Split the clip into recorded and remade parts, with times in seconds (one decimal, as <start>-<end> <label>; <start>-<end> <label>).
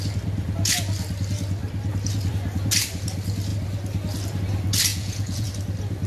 0.0-4.9 recorded; 4.9-5.5 remade; 5.5-6.1 recorded